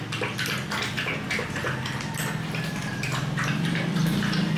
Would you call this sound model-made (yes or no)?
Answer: no